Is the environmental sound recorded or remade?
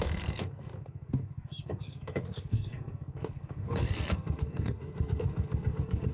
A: remade